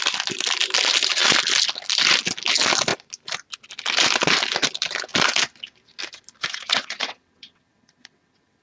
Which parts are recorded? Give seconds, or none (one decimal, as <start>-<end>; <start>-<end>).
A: 0.0-6.5